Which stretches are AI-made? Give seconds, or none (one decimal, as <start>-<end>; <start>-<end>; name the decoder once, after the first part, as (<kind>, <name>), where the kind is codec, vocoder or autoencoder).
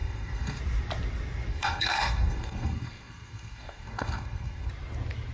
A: 0.0-0.6 (codec, SNAC); 1.5-4.7